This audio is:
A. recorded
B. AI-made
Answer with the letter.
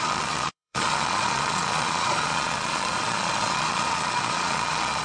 B